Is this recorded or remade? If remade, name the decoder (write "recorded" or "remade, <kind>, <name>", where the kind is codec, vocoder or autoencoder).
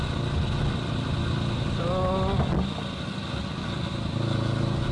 recorded